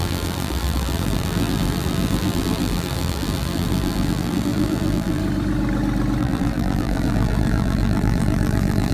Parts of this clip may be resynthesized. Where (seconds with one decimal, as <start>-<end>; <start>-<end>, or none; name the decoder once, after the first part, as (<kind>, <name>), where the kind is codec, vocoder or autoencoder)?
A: 0.0-5.2 (vocoder, BigVGAN v2); 6.2-8.9

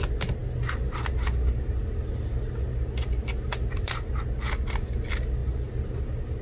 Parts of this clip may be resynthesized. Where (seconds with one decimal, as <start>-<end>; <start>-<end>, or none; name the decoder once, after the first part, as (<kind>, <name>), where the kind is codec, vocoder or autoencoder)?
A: none